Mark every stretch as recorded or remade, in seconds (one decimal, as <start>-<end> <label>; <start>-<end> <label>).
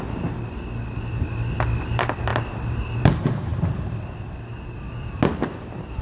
0.0-6.0 recorded